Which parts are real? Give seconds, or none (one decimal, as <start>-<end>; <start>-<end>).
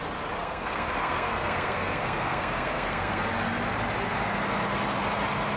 0.0-0.4; 3.3-5.6